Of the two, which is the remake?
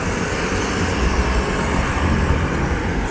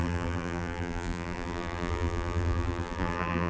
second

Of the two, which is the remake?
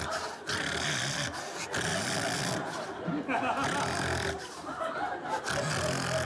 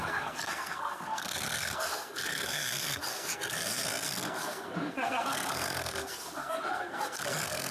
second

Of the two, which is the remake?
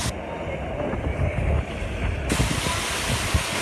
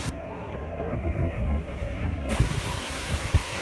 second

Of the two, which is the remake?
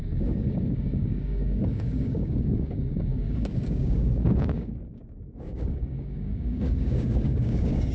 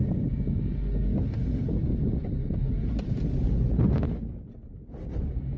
first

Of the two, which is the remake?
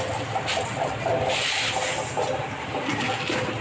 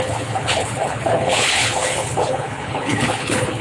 second